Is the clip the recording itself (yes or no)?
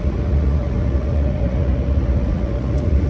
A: no